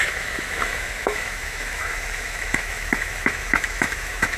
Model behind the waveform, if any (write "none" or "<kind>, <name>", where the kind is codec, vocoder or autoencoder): autoencoder, DAC-VAE